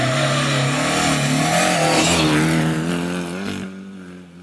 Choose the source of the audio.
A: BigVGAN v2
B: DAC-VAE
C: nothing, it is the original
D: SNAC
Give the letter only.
C